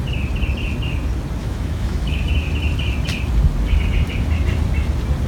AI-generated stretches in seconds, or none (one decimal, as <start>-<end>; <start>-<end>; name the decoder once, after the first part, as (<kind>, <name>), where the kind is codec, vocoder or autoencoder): 1.4-2.3 (autoencoder, DAC-VAE)